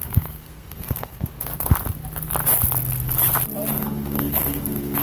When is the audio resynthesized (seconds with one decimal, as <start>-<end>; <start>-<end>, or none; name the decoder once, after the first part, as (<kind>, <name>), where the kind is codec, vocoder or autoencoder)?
0.0-1.5 (codec, SNAC); 3.7-5.0